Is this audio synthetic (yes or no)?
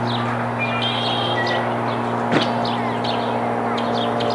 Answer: no